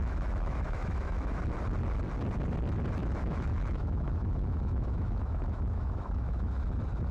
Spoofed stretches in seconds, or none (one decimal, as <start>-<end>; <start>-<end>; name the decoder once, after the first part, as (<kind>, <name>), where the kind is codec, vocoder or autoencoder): 0.0-1.4 (autoencoder, DAC-VAE); 3.0-6.6